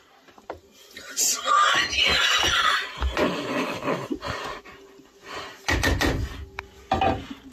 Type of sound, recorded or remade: recorded